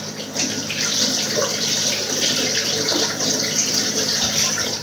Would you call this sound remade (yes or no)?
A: no